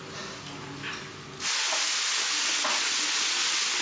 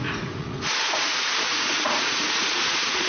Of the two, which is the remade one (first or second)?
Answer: second